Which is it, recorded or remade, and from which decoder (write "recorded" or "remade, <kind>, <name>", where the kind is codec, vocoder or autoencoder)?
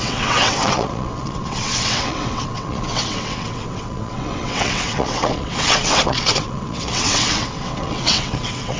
remade, vocoder, WaveNeXt